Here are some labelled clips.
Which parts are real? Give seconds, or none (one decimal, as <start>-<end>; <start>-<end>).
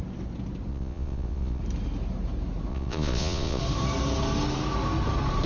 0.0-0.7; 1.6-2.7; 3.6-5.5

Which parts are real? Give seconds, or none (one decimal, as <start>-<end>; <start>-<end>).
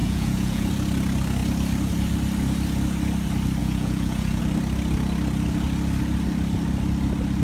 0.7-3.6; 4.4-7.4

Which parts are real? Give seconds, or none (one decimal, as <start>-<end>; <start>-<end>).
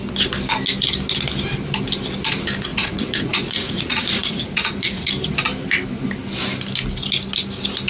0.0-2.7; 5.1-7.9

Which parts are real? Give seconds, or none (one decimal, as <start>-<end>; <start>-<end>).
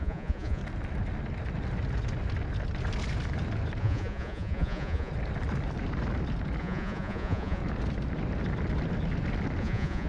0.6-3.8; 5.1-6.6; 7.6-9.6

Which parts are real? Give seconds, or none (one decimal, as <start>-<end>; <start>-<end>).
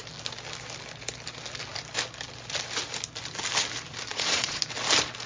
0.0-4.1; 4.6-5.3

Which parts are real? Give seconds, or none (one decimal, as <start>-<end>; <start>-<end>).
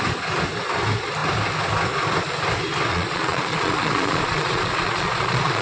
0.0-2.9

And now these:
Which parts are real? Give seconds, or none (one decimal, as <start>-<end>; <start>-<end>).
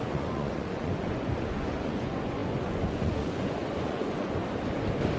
4.4-5.2